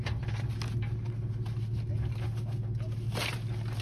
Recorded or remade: recorded